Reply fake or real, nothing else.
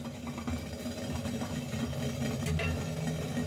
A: real